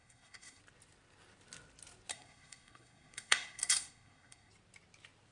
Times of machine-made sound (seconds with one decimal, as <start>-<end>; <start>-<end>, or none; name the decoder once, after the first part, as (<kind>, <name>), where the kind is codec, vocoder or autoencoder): 0.0-0.6 (codec, SNAC); 2.1-4.5